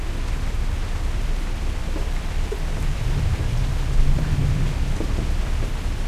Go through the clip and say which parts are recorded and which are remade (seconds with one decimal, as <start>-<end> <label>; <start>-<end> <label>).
0.0-1.8 recorded; 1.8-3.7 remade; 3.7-6.1 recorded